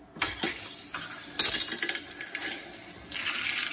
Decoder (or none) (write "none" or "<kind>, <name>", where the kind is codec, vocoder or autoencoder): none